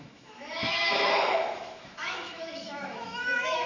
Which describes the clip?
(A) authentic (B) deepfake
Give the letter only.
B